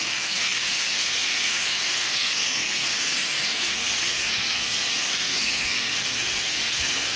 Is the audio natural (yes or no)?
no